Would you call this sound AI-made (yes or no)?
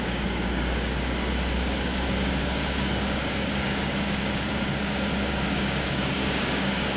yes